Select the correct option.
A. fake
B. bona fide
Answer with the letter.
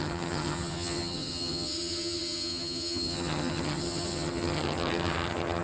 A